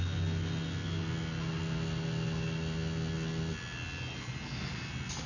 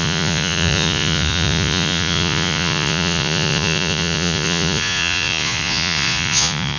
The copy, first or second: second